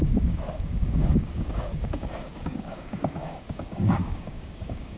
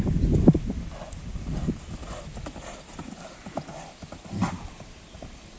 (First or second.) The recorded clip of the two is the second